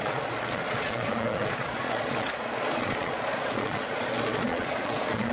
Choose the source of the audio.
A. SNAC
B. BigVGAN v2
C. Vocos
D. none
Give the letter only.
C